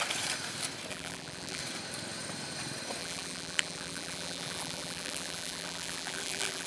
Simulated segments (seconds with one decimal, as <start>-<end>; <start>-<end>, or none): 0.9-1.6; 3.0-6.7